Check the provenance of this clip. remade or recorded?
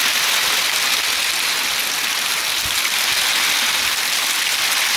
recorded